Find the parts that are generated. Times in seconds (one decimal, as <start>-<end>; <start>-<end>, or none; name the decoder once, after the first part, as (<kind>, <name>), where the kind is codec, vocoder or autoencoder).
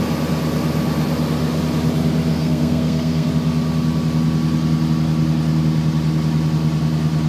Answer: 2.3-3.3 (codec, SNAC)